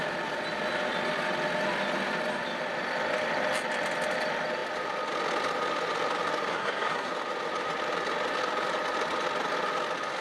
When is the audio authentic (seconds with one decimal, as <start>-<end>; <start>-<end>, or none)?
0.0-6.5; 7.1-10.2